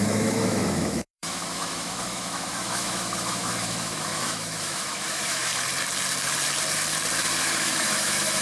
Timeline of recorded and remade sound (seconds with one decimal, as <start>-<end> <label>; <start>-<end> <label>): 0.0-5.5 remade; 5.5-7.4 recorded; 7.4-8.4 remade